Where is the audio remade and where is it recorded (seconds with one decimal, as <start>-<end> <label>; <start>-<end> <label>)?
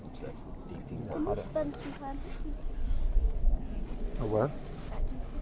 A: 0.0-5.4 recorded